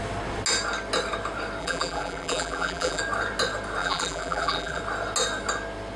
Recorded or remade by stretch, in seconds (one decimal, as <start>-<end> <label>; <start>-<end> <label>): 0.0-1.6 recorded; 1.6-3.0 remade; 3.0-3.8 recorded; 3.8-4.8 remade; 4.8-6.0 recorded